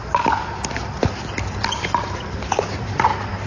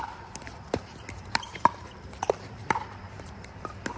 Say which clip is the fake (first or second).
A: second